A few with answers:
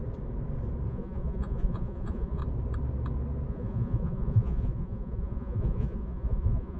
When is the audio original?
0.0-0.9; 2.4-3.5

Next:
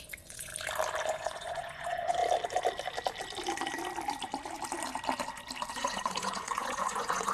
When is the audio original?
0.5-1.0; 2.2-5.7

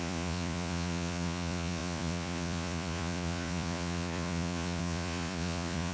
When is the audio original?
none

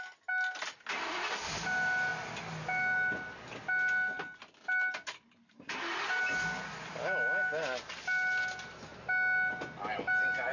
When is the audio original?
0.0-10.5

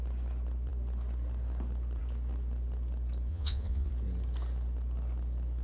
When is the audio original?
0.0-3.3; 3.9-5.6

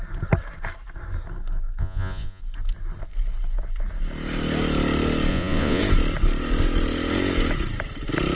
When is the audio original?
0.0-1.8; 2.4-5.3; 5.8-8.3

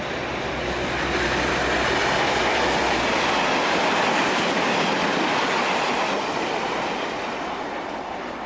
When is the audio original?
0.0-8.5

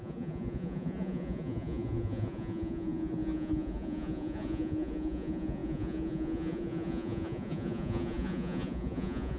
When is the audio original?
none